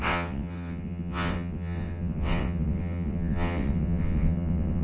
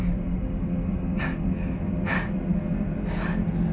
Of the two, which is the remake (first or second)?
first